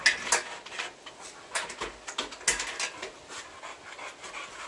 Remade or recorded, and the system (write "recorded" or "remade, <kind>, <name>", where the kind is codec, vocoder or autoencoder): recorded